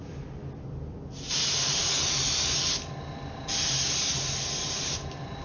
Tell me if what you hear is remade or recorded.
recorded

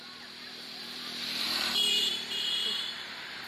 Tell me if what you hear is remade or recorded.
remade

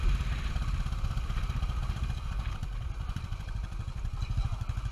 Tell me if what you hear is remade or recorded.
recorded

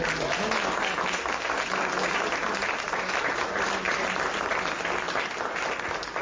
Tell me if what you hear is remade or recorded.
recorded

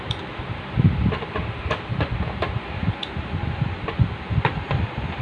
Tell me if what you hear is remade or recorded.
recorded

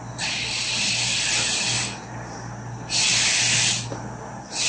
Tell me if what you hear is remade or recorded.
recorded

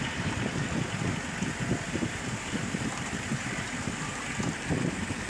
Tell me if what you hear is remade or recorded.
remade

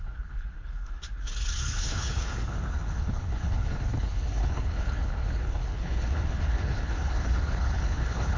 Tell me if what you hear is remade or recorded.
remade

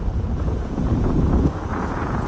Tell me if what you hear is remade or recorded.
remade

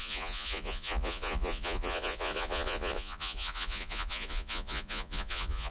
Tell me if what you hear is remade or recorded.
remade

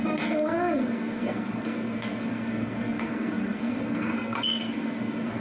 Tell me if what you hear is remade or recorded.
remade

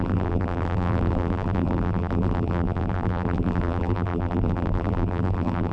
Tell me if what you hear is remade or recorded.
remade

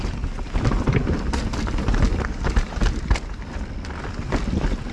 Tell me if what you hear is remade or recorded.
recorded